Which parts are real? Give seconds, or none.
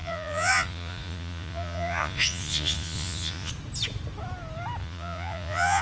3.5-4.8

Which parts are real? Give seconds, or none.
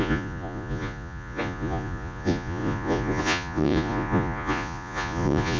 none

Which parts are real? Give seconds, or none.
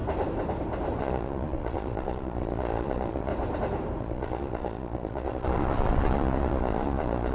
0.0-1.0; 3.3-4.0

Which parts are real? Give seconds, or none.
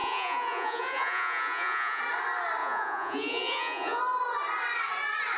2.0-2.6; 4.0-5.4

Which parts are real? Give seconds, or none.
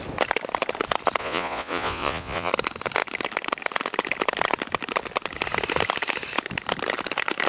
0.0-1.2; 2.5-7.5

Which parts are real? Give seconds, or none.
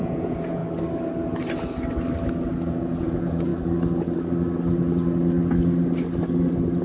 0.6-2.5; 3.5-6.8